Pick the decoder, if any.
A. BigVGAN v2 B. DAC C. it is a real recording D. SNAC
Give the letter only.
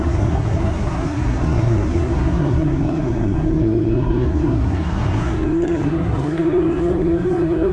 D